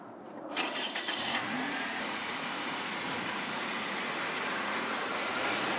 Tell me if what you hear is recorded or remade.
remade